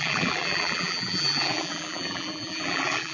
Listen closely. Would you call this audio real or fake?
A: fake